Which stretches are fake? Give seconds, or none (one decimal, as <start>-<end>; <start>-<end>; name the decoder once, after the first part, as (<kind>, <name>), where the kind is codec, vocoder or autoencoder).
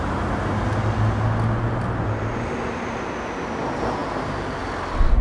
none